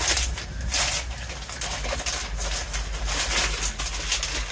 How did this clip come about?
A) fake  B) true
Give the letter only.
B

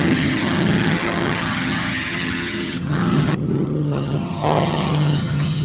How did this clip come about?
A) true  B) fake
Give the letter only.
B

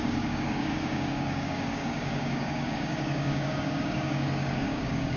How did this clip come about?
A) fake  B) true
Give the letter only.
A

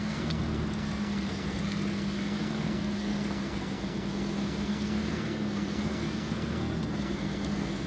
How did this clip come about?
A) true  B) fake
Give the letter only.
B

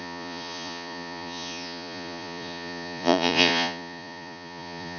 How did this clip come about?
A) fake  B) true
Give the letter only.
A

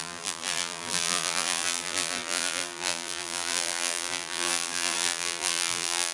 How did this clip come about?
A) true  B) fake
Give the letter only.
B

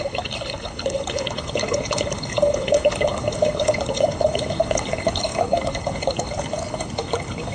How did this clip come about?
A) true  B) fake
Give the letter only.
B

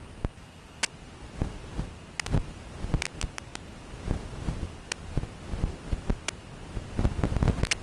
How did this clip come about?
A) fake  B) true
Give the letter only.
B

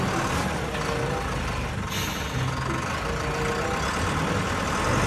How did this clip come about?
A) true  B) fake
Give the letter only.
A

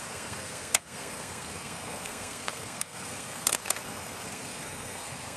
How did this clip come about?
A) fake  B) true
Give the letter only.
A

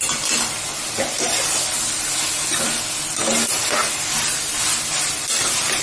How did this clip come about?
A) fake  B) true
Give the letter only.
B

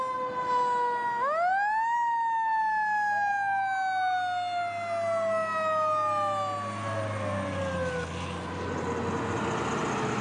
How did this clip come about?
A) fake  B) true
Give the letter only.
B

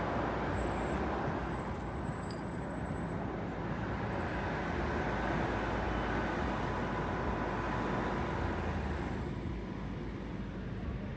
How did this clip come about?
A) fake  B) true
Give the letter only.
B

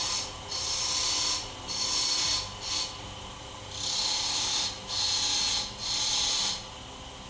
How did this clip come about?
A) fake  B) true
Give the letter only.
B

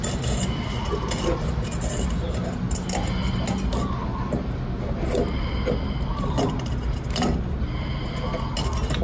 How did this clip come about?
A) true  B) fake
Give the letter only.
A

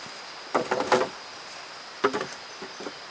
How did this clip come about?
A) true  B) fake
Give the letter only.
A